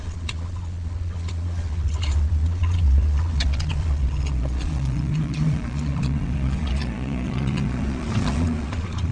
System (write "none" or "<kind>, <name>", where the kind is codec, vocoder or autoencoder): vocoder, Vocos